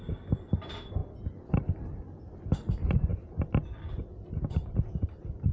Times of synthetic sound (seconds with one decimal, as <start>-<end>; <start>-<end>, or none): none